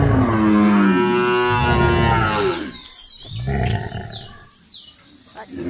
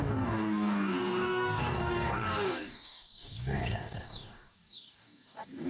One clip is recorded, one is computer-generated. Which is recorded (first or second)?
first